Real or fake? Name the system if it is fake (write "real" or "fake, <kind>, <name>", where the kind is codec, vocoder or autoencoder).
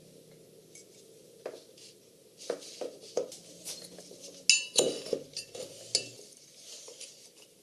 real